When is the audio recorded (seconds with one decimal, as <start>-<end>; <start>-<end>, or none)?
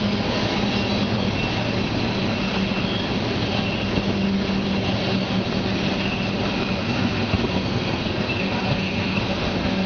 0.0-6.8